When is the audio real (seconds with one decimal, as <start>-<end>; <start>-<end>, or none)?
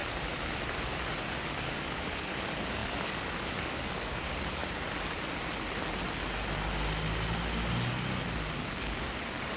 0.0-1.6; 4.6-8.5